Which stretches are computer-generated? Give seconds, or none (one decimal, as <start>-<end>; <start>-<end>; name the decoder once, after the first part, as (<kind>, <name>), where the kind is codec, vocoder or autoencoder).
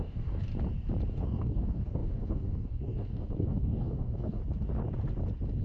0.0-0.5 (codec, DAC); 1.1-4.4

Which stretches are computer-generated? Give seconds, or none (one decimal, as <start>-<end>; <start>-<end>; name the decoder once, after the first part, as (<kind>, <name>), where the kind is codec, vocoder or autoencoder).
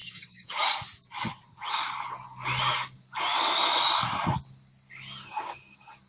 0.0-0.7 (codec, DAC)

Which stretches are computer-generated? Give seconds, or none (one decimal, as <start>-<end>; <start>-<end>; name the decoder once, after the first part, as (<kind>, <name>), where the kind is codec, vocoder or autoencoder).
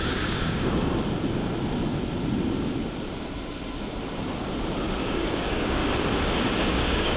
0.0-0.9 (codec, DAC); 5.0-5.8; 6.6-7.2